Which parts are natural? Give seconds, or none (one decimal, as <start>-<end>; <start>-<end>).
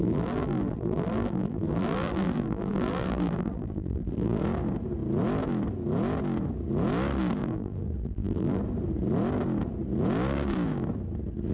4.4-7.4; 8.6-11.5